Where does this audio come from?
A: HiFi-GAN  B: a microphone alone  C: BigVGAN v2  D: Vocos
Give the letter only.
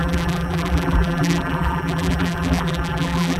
C